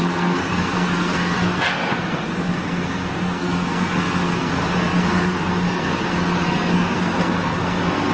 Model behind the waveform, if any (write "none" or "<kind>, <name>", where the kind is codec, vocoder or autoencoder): codec, SNAC